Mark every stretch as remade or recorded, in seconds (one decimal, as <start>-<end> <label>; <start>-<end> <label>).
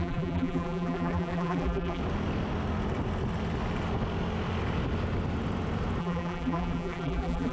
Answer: 0.0-2.0 remade; 2.0-6.0 recorded; 6.0-7.5 remade